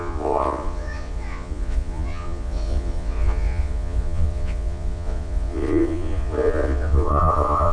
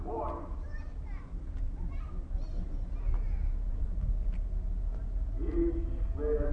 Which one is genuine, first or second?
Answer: second